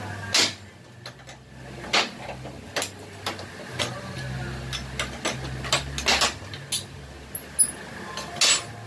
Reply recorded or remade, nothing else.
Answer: recorded